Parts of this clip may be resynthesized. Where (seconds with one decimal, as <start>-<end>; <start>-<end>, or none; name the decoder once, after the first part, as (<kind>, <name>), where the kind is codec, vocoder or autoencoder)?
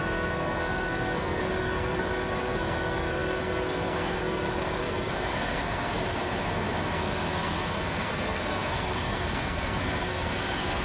0.0-10.8 (codec, SNAC)